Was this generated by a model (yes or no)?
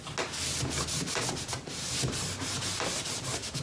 no